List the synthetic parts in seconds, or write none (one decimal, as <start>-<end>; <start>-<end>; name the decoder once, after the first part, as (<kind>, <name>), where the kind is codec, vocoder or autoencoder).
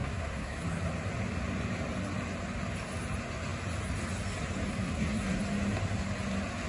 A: 0.0-0.6 (codec, SNAC); 4.7-5.4